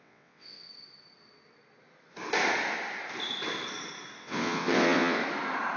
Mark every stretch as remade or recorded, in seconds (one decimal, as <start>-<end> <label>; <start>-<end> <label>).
0.0-0.7 remade; 0.7-4.2 recorded; 4.2-5.2 remade; 5.2-5.8 recorded